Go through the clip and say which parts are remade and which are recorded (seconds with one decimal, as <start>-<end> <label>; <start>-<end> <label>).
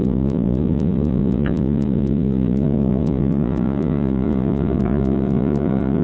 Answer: 0.0-6.0 remade